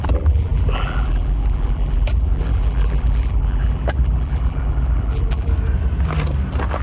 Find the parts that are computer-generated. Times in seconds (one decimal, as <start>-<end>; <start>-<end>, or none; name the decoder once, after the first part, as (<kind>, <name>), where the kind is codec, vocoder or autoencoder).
0.0-5.5 (vocoder, BigVGAN v2)